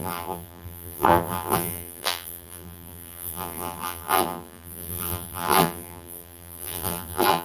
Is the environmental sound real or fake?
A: fake